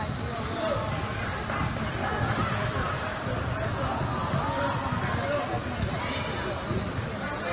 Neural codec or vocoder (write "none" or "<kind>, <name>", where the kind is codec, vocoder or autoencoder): none